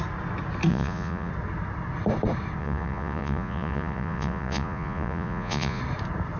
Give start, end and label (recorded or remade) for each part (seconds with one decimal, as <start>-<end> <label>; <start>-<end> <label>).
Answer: 0.0-0.7 recorded; 0.7-1.3 remade; 1.3-2.6 recorded; 2.6-5.8 remade; 5.8-6.4 recorded

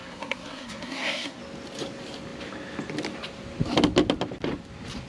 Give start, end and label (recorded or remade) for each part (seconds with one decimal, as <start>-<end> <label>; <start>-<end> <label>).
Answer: 0.0-1.4 remade; 1.4-5.1 recorded

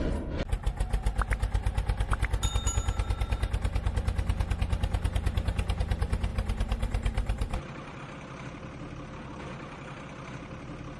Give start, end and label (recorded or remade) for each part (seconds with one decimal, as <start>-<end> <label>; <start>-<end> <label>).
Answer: 0.0-6.3 recorded; 6.3-8.0 remade; 8.0-11.0 recorded

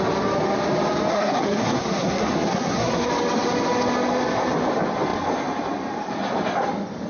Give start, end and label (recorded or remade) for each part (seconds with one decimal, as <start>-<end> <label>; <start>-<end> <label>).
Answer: 0.0-1.1 recorded; 1.1-3.1 remade; 3.1-7.1 recorded

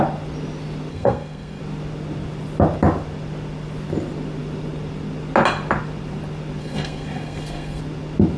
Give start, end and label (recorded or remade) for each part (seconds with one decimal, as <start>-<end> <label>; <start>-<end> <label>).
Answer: 0.0-0.9 recorded; 0.9-1.6 remade; 1.6-6.6 recorded; 6.6-7.8 remade; 7.8-8.4 recorded

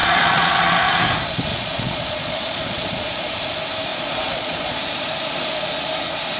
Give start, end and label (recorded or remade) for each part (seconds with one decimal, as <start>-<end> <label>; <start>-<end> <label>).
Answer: 0.0-1.0 remade; 1.0-1.5 recorded; 1.5-3.3 remade; 3.3-3.9 recorded; 3.9-4.8 remade; 4.8-6.4 recorded

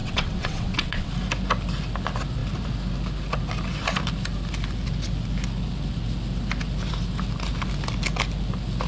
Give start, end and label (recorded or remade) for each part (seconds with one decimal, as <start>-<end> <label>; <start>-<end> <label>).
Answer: 0.0-1.1 remade; 1.1-8.9 recorded